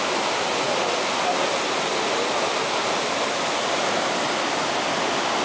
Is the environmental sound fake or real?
real